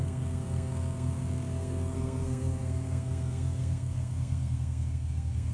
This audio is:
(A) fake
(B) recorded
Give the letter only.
A